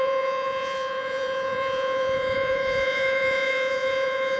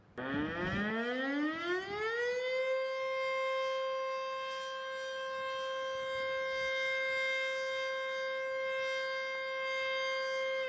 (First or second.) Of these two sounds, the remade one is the first